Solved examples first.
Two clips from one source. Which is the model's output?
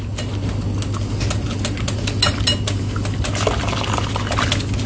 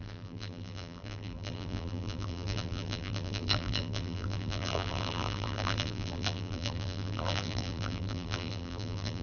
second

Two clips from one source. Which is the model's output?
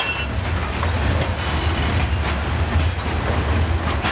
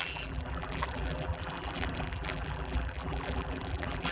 second